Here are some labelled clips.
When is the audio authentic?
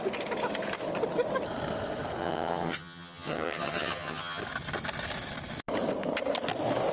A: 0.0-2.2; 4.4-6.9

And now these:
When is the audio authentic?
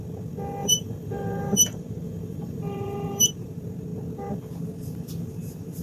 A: 0.0-0.6; 3.3-5.8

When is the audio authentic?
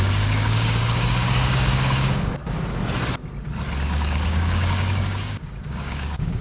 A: 2.4-3.8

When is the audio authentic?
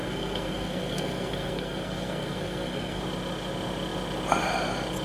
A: 3.0-5.0